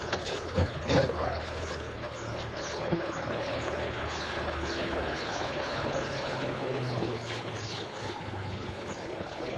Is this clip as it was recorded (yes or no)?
no